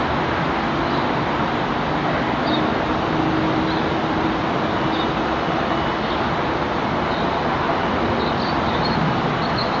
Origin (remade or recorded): recorded